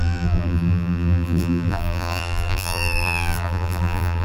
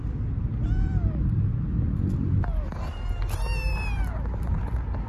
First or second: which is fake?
first